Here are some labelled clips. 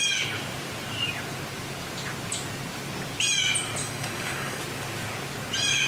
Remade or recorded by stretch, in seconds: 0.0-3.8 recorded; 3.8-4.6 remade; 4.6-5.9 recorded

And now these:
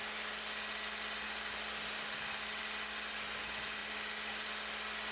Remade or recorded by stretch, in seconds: 0.0-5.1 recorded